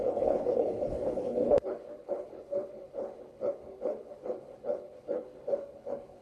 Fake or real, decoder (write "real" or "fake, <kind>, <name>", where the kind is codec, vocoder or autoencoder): fake, codec, HILCodec